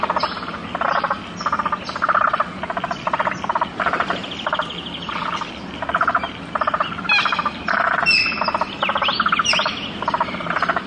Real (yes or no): yes